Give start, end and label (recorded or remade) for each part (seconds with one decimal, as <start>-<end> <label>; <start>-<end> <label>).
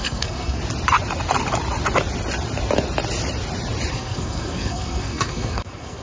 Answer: 0.0-0.6 remade; 0.6-3.9 recorded; 3.9-6.0 remade